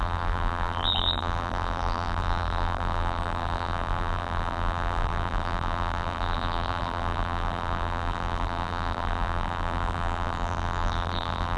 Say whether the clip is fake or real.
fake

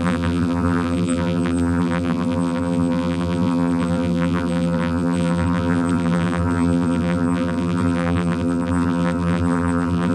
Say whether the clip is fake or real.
fake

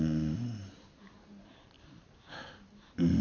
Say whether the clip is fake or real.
fake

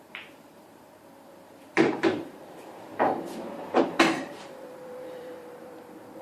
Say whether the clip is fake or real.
fake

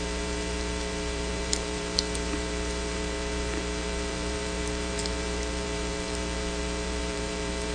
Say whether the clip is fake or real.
fake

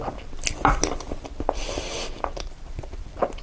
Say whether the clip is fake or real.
fake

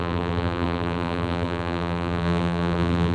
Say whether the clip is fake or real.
fake